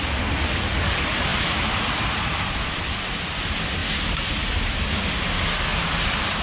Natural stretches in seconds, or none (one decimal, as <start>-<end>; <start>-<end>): 0.0-1.3; 2.9-3.8; 4.6-5.7